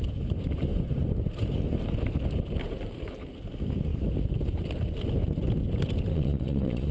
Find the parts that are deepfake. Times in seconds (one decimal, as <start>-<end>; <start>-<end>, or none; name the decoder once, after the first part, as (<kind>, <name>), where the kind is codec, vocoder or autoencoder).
6.1-6.9 (vocoder, Vocos)